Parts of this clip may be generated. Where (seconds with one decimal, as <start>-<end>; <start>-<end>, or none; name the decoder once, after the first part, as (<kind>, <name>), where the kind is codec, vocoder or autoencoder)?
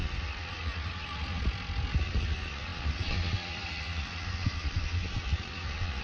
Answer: 0.0-1.4 (vocoder, Vocos); 2.0-6.0